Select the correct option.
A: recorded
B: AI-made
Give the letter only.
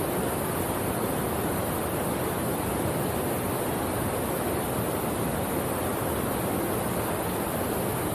A